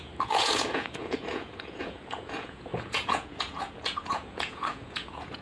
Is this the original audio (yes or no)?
no